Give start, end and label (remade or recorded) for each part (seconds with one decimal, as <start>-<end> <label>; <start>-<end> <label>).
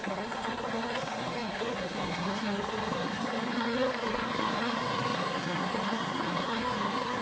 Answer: 0.0-7.2 remade